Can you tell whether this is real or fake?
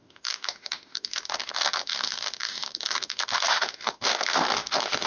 fake